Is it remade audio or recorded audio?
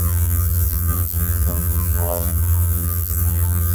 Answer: remade